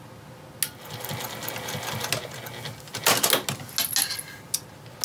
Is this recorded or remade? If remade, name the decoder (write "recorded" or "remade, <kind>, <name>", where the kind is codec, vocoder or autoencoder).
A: recorded